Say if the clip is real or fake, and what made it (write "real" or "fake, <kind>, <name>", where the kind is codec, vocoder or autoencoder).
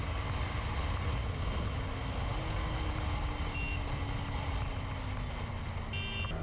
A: real